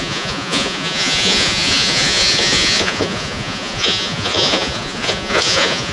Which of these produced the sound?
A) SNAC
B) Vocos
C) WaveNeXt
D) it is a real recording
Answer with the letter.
B